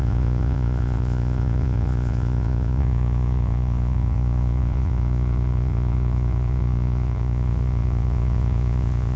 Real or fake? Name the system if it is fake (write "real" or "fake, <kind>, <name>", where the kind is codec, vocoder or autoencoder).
fake, vocoder, Vocos